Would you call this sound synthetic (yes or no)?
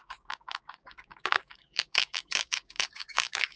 yes